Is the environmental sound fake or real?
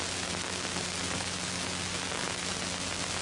real